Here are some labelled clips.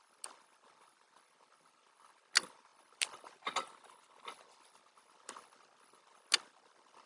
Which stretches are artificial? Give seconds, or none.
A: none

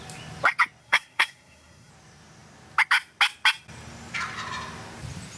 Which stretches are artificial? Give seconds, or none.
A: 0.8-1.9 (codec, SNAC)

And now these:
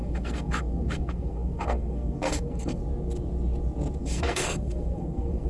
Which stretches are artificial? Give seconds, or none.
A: 0.0-2.8 (codec, SNAC); 4.0-5.5

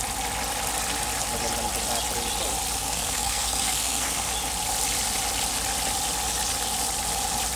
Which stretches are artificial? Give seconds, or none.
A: 2.8-4.3 (codec, SNAC)